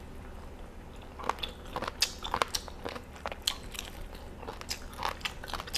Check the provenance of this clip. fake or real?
real